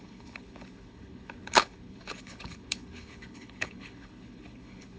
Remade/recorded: remade